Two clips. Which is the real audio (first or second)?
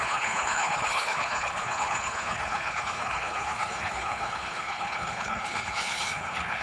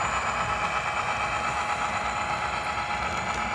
second